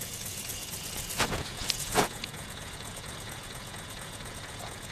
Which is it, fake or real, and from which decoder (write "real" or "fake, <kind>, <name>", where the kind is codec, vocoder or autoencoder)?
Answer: fake, vocoder, Vocos